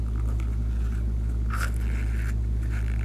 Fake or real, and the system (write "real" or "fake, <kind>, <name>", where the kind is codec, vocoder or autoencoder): real